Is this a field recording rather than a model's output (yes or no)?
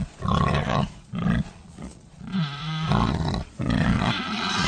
no